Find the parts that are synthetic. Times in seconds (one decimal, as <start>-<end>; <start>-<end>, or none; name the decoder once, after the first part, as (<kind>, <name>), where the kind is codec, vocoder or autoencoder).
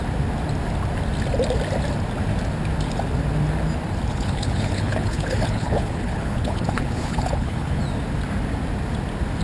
4.1-7.8 (codec, HILCodec)